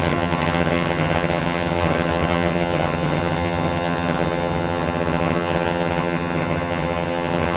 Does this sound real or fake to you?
fake